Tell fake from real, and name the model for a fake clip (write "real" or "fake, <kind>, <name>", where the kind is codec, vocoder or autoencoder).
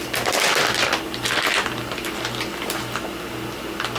real